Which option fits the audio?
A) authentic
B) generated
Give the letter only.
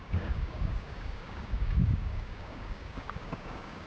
B